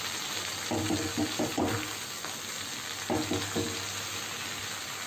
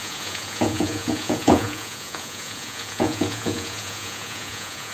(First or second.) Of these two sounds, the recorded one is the first